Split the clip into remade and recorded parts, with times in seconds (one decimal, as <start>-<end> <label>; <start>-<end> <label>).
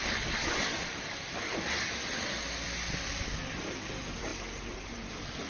0.0-3.3 remade; 3.3-5.5 recorded